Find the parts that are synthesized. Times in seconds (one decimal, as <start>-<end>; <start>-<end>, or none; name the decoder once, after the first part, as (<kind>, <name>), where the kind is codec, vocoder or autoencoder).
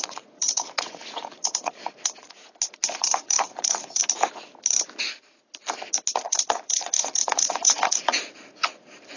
0.0-2.4 (vocoder, Vocos); 3.0-4.0; 6.2-9.2